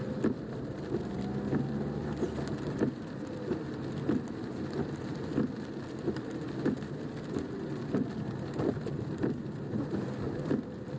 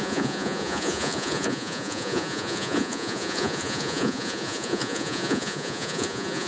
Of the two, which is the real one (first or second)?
first